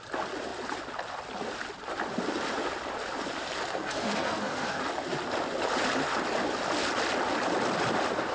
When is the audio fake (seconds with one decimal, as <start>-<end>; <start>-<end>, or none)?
3.7-4.8